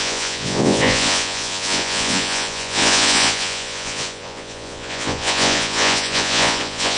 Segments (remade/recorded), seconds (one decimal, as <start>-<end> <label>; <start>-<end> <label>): 0.0-7.0 remade

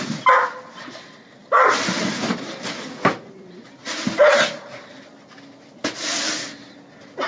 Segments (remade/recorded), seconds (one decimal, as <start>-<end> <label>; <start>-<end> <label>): 0.0-7.3 recorded

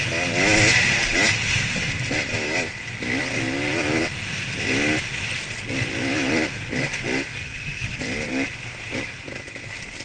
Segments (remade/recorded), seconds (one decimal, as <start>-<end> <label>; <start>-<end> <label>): 0.0-7.3 recorded; 7.3-8.0 remade; 8.0-10.0 recorded

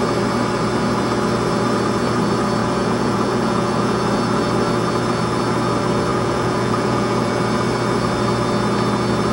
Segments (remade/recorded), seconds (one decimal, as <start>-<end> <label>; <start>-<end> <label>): 0.0-2.6 recorded; 2.6-4.0 remade; 4.0-6.1 recorded; 6.1-7.4 remade; 7.4-9.3 recorded

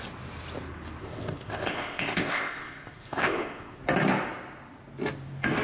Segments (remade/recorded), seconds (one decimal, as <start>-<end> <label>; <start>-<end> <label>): 0.0-1.0 recorded; 1.0-3.8 remade; 3.8-5.6 recorded

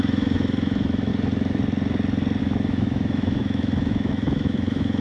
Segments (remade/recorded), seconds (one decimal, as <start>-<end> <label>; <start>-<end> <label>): 0.0-1.1 remade; 1.1-2.4 recorded; 2.4-5.0 remade

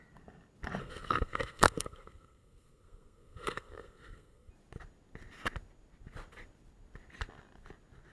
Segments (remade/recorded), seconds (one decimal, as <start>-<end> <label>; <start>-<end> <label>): 0.0-0.8 recorded; 0.8-4.5 remade; 4.5-8.1 recorded